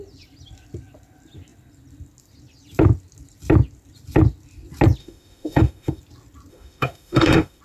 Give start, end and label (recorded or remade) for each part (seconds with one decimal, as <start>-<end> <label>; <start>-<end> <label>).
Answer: 0.0-5.0 recorded; 5.0-6.0 remade; 6.0-6.5 recorded; 6.5-7.6 remade